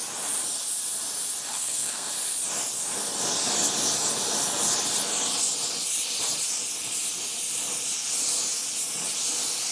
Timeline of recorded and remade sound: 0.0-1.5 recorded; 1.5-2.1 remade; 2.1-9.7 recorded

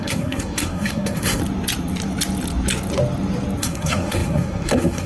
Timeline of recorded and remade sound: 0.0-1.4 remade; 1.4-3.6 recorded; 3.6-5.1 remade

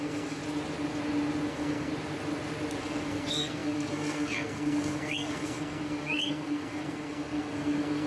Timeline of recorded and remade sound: 0.0-0.4 remade; 0.4-1.5 recorded; 1.5-1.9 remade; 1.9-2.8 recorded; 2.8-8.1 remade

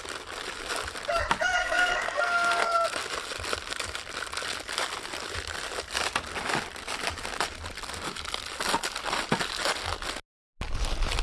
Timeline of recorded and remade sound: 0.0-1.6 recorded; 1.6-3.1 remade; 3.1-11.2 recorded

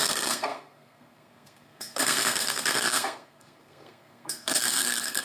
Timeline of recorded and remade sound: 0.0-5.2 remade